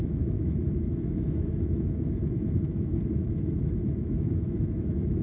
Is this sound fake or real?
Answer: fake